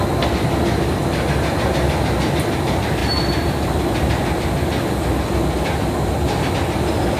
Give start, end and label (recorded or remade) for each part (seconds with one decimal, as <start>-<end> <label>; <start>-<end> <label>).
0.0-7.2 recorded